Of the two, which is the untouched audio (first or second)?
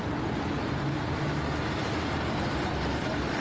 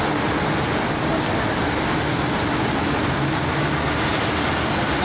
second